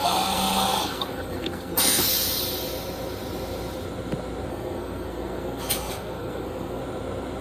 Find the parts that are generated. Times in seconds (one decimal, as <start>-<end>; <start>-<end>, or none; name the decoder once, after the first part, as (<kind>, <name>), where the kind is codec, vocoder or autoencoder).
0.0-2.1 (codec, SNAC); 4.5-6.8